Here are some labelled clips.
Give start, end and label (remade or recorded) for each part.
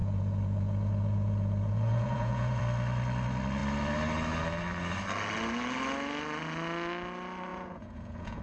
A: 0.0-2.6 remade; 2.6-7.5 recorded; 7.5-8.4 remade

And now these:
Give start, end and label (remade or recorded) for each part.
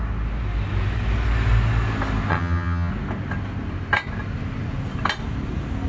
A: 0.0-2.3 recorded; 2.3-2.9 remade; 2.9-5.9 recorded